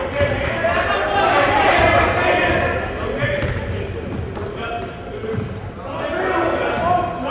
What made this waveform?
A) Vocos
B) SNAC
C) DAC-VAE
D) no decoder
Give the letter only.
D